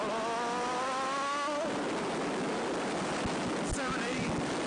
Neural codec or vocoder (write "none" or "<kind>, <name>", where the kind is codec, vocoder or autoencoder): none